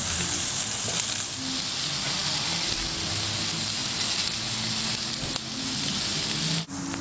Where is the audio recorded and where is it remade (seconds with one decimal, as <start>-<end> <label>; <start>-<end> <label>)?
0.0-7.0 recorded